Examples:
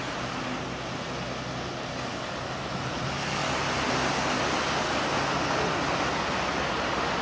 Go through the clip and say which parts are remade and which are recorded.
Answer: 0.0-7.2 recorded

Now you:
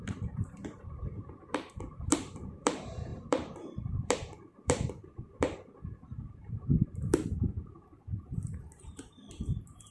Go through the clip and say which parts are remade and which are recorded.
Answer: 0.0-9.9 remade

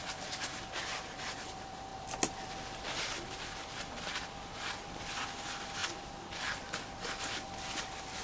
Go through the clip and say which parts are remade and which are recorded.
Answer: 0.0-8.2 remade

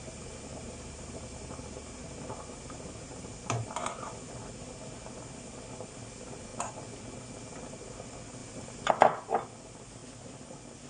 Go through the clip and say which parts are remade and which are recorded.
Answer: 0.0-0.5 recorded; 0.5-4.1 remade; 4.1-8.4 recorded; 8.4-8.9 remade; 8.9-10.9 recorded

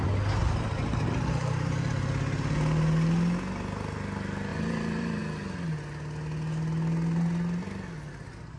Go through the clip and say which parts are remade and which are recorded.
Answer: 0.0-0.4 recorded; 0.4-1.9 remade; 1.9-4.5 recorded; 4.5-5.2 remade; 5.2-8.6 recorded

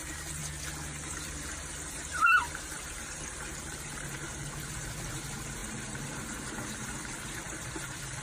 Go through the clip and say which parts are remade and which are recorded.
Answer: 0.0-0.4 remade; 0.4-1.1 recorded; 1.1-8.2 remade

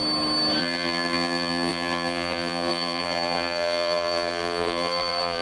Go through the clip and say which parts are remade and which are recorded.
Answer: 0.0-0.6 recorded; 0.6-5.4 remade

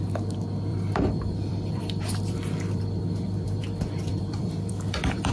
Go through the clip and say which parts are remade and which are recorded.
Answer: 0.0-0.7 recorded; 0.7-3.6 remade; 3.6-4.1 recorded; 4.1-5.3 remade